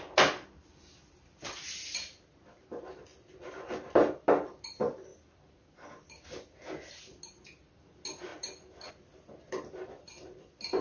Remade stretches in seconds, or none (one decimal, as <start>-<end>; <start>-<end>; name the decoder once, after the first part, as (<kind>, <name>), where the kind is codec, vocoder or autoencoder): 3.1-4.3 (vocoder, BigVGAN v2); 8.3-8.9